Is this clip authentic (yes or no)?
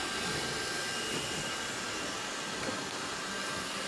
yes